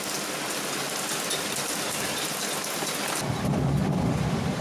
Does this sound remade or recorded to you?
recorded